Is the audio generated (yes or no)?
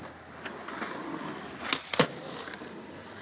no